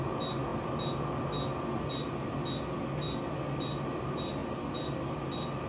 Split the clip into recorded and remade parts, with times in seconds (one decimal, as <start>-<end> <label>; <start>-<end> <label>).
0.0-5.7 recorded